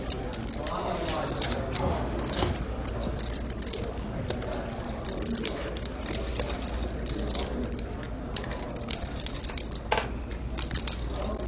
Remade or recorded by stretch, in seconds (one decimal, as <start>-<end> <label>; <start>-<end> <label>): 0.0-1.9 recorded; 1.9-2.5 remade; 2.5-11.5 recorded